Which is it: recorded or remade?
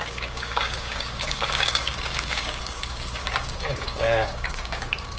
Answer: remade